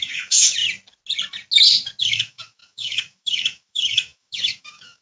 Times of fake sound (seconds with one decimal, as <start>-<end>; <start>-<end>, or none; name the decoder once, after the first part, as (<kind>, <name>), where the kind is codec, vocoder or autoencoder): 0.0-0.6 (autoencoder, DAC-VAE); 2.0-5.0